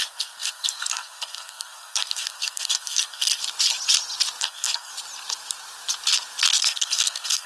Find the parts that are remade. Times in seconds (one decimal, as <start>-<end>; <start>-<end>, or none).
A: 0.0-3.4; 4.4-4.9; 6.6-7.5

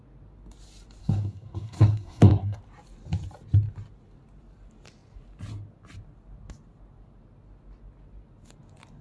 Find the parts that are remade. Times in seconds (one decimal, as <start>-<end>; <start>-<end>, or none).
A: 1.0-2.6

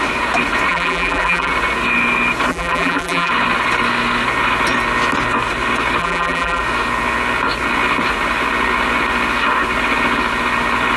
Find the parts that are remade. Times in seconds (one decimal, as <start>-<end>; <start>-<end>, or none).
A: 0.7-1.5; 2.5-3.3; 6.0-6.6

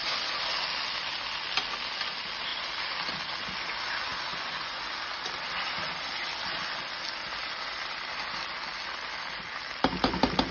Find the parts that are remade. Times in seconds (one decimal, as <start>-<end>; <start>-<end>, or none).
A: 4.3-4.8

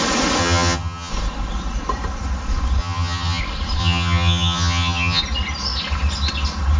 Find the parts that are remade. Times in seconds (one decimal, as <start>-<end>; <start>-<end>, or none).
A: 0.4-1.1; 2.8-3.4; 3.8-5.2